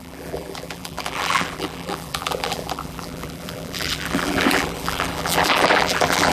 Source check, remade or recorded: remade